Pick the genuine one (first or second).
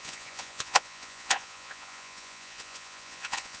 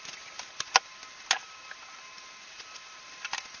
second